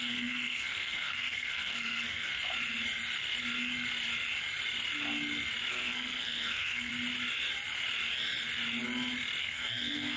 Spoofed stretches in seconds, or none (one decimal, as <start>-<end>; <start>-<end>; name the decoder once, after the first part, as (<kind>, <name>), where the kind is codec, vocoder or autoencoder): 0.0-2.3 (codec, SNAC); 5.7-6.9; 9.4-10.2